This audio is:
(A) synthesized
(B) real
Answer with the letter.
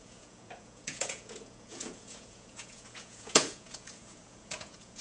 A